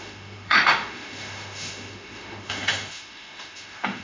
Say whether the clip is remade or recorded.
remade